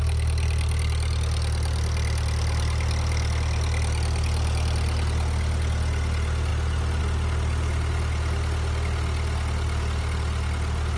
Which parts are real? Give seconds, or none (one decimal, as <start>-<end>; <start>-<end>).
0.0-11.0